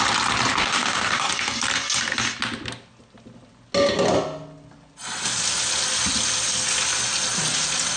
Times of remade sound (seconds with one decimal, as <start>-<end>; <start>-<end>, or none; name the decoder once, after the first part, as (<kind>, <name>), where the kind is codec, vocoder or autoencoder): 0.6-1.3 (codec, DAC)